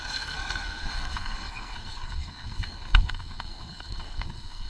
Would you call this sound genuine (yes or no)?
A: no